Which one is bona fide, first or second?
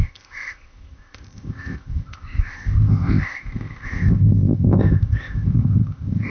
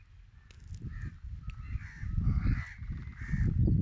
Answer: second